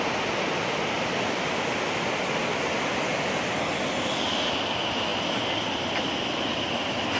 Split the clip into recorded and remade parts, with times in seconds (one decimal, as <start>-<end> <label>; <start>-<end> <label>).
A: 0.0-7.2 recorded